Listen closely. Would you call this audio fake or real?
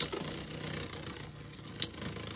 real